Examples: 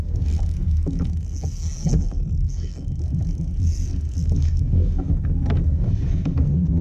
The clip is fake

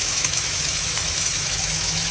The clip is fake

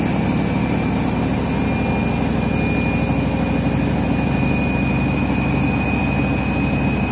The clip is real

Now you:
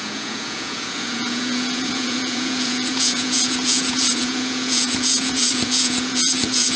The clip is fake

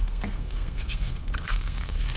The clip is fake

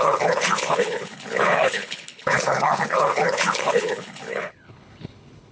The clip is fake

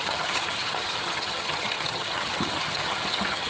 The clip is fake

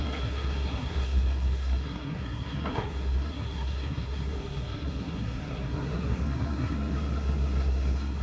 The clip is fake